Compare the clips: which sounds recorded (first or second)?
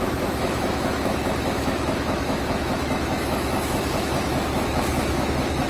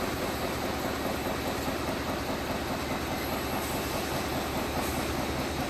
second